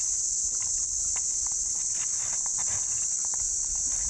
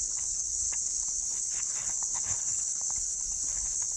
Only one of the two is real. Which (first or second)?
first